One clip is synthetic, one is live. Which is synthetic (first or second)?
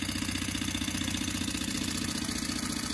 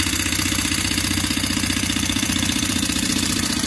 second